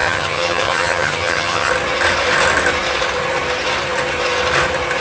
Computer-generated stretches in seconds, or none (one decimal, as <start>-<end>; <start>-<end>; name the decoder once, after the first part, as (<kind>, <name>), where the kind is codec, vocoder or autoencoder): 0.0-1.7 (vocoder, HiFi-GAN)